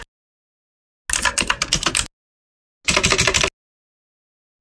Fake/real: real